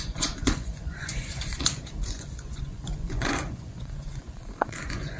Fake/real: fake